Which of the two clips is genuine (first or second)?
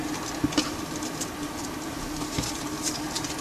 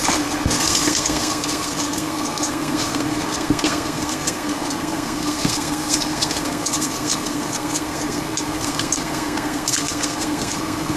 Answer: first